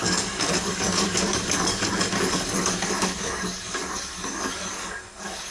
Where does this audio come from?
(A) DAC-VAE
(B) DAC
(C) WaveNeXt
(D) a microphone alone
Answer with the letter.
B